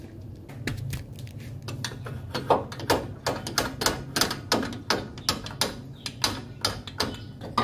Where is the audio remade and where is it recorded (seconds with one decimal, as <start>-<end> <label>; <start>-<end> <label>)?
0.0-7.6 recorded